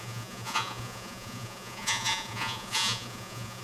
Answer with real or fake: fake